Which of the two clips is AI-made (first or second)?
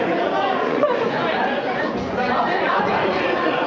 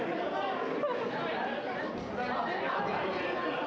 first